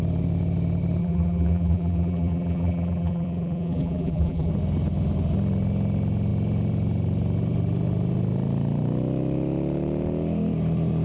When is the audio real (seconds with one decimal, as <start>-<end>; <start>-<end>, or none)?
0.0-1.0; 4.5-11.0